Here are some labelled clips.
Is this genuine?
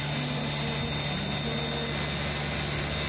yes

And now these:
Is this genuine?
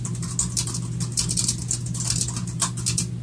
yes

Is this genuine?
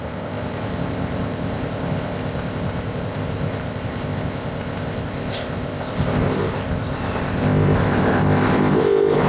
no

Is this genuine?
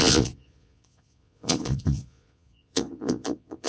no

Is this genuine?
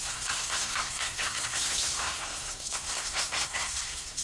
no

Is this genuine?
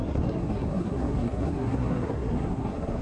no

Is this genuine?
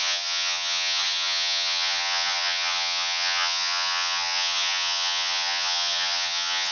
no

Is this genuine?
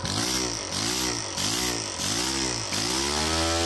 yes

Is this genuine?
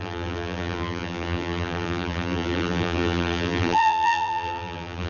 no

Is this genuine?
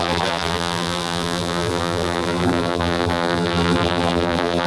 no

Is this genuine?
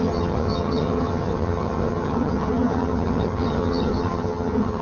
no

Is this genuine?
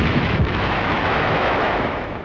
no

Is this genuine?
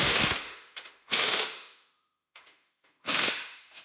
no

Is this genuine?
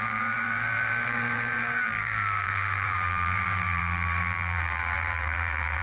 no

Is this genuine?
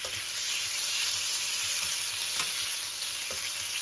yes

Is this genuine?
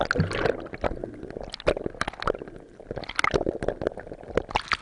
yes